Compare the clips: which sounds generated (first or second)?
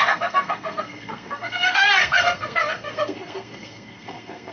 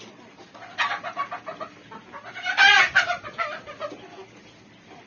first